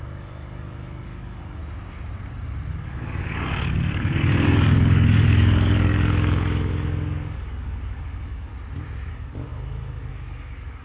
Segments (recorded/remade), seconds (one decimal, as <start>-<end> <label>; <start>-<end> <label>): 0.0-1.6 remade; 1.6-2.7 recorded; 2.7-8.5 remade; 8.5-9.1 recorded; 9.1-10.8 remade